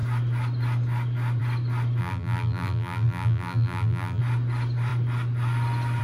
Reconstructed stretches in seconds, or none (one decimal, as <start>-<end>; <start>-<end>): 2.0-4.2